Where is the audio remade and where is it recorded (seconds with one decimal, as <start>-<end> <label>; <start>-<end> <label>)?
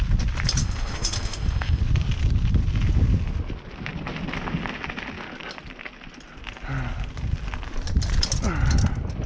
0.0-0.6 recorded; 0.6-1.8 remade; 1.8-9.3 recorded